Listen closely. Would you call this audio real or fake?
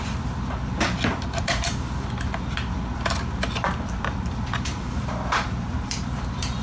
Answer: fake